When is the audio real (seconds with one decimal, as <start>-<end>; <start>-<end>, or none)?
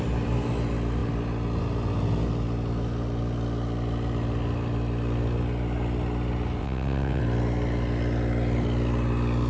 0.0-6.6; 7.2-9.5